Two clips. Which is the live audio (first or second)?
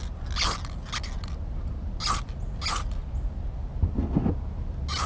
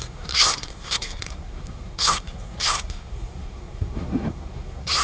first